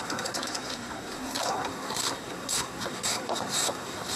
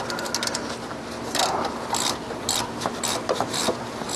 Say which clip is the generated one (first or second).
first